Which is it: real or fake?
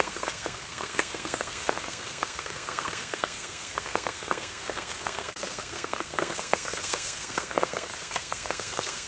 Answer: fake